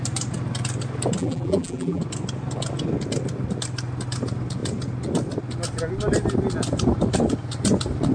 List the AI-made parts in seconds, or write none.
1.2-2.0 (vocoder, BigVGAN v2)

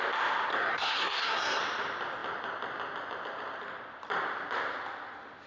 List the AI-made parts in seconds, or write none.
0.5-1.6 (codec, SNAC)

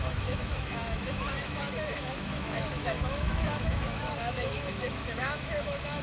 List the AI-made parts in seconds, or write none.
0.0-6.0 (autoencoder, DAC-VAE)

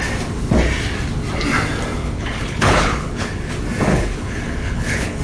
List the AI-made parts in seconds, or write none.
2.0-3.5 (codec, HILCodec); 3.9-5.2

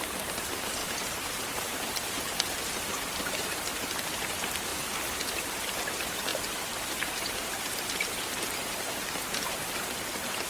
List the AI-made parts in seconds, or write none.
0.0-10.5 (vocoder, BigVGAN v2)